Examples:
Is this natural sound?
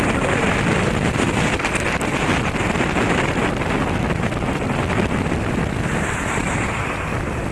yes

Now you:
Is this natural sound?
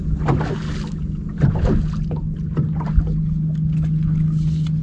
yes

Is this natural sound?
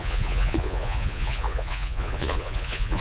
no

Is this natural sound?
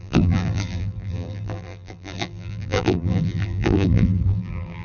no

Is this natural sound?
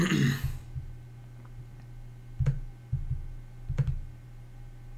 yes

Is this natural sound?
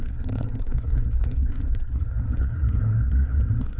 no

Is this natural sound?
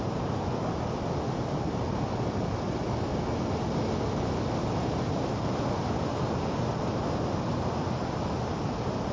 yes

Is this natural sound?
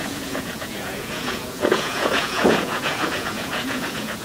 no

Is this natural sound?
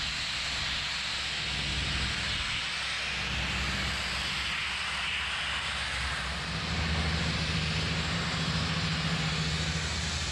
yes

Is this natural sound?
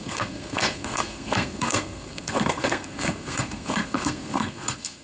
no